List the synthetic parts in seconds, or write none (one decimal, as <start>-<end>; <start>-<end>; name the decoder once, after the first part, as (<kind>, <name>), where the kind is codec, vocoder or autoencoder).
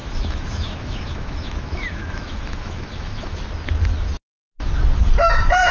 0.0-3.4 (autoencoder, DAC-VAE)